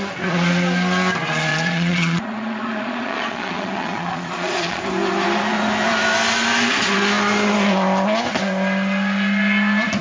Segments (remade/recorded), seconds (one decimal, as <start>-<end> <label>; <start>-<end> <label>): 0.0-1.5 recorded; 1.5-4.8 remade; 4.8-10.0 recorded

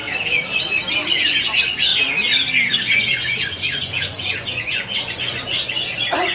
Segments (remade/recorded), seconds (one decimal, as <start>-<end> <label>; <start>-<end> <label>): 0.0-1.1 recorded; 1.1-1.9 remade; 1.9-2.7 recorded; 2.7-6.3 remade

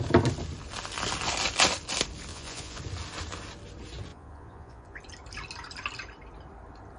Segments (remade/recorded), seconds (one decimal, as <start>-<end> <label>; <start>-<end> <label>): 0.0-2.3 recorded; 2.3-2.8 remade; 2.8-4.1 recorded; 4.1-5.0 remade; 5.0-7.0 recorded

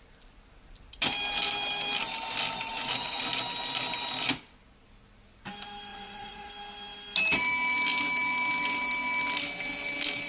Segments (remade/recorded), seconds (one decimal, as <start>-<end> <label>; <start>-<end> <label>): 0.0-2.7 recorded; 2.7-3.2 remade; 3.2-5.9 recorded; 5.9-6.5 remade; 6.5-10.3 recorded

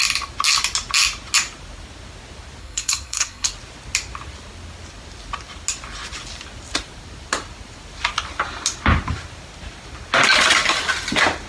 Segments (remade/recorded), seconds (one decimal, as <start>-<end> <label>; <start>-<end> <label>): 0.0-2.6 recorded; 2.6-3.5 remade; 3.5-11.5 recorded

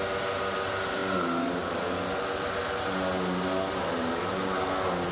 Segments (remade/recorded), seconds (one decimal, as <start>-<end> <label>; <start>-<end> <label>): 0.0-5.1 recorded

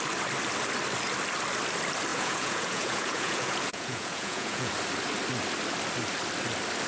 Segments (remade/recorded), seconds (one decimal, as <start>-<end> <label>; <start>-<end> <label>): 0.0-2.1 recorded; 2.1-4.7 remade; 4.7-6.9 recorded